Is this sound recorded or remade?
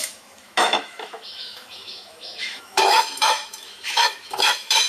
remade